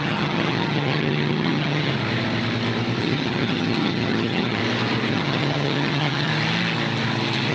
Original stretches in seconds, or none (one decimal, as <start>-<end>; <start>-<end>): 1.9-3.0; 4.6-5.1; 6.3-7.5